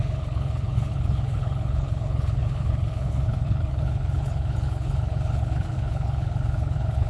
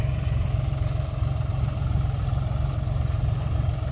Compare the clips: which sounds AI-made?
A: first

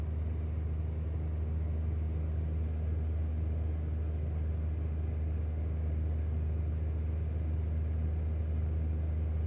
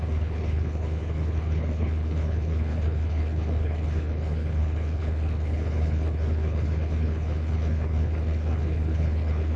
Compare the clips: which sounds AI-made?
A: second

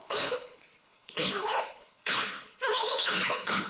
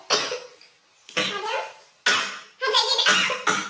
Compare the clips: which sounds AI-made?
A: first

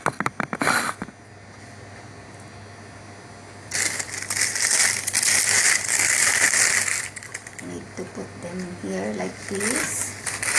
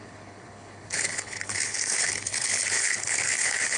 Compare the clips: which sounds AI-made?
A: second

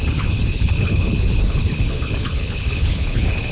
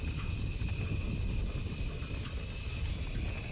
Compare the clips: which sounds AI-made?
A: first